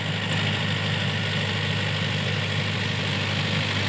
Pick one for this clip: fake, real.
real